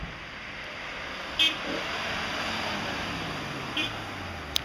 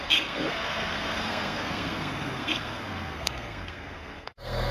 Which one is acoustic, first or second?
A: first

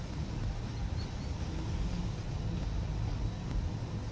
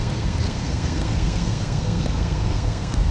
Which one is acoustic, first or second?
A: first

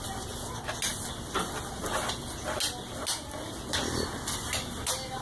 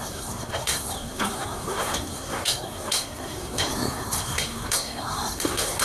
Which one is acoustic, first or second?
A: first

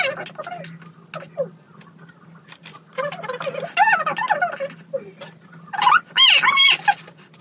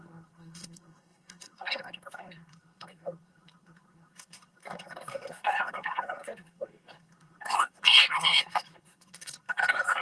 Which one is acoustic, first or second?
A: first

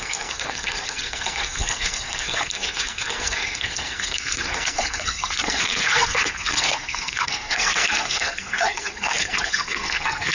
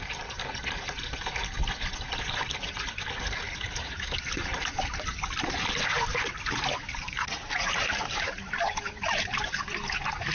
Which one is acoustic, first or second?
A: second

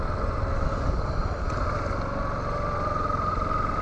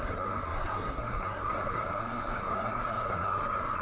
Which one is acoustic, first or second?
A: first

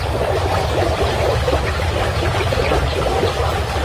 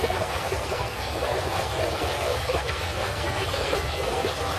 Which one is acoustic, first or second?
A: first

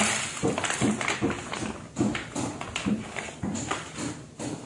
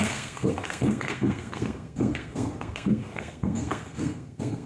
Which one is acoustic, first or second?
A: first